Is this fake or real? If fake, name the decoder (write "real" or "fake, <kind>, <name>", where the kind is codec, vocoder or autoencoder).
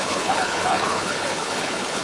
fake, codec, HILCodec